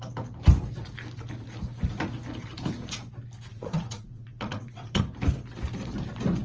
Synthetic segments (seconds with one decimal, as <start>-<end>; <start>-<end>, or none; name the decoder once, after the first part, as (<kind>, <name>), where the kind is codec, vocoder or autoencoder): 3.5-5.0 (vocoder, WaveNeXt)